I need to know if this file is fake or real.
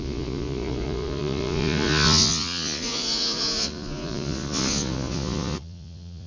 fake